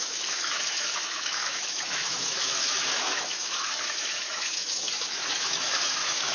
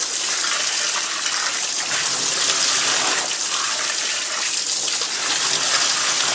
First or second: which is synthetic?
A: first